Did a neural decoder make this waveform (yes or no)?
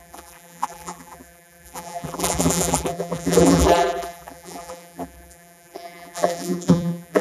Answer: yes